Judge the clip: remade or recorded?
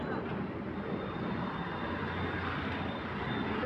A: recorded